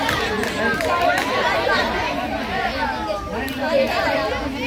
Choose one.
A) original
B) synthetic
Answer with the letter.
A